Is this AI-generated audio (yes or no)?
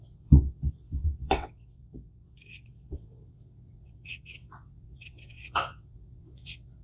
yes